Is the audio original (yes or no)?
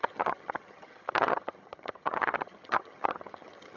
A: no